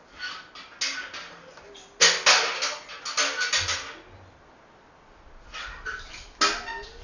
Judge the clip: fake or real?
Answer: real